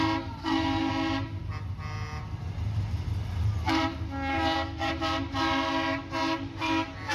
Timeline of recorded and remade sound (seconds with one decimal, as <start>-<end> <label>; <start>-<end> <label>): 0.0-0.4 recorded; 0.4-0.9 remade; 0.9-4.3 recorded; 4.3-4.9 remade; 4.9-7.1 recorded